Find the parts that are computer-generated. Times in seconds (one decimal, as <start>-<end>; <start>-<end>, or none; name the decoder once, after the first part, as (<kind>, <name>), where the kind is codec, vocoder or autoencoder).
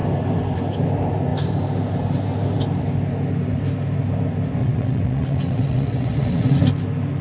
4.6-6.6 (vocoder, WaveNeXt)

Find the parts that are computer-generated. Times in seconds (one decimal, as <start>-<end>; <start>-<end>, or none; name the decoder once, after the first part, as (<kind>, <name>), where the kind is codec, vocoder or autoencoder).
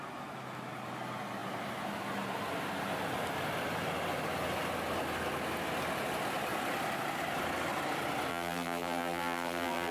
8.3-9.9 (vocoder, BigVGAN v2)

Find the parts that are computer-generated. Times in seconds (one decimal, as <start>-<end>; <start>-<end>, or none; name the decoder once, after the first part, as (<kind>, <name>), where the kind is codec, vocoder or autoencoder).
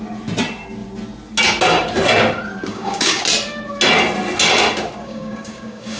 2.7-3.2 (codec, DAC); 5.0-6.0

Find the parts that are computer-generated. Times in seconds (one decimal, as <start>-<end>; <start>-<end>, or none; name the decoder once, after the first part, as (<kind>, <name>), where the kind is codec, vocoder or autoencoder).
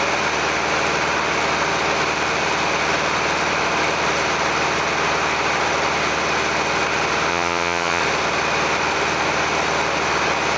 7.3-8.0 (vocoder, HiFi-GAN)